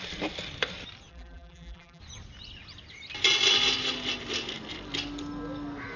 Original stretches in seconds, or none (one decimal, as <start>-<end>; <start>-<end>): 0.0-1.1; 2.0-6.0